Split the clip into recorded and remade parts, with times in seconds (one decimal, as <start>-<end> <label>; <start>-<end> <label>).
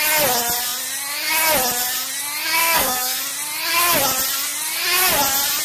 0.0-2.6 recorded; 2.6-3.2 remade; 3.2-5.6 recorded